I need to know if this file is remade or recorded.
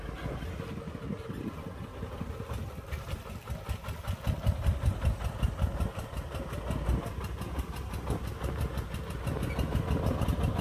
recorded